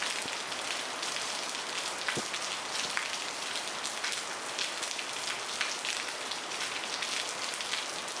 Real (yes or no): yes